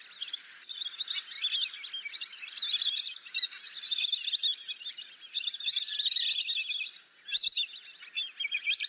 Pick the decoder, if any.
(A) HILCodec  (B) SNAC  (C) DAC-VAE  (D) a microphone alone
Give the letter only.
D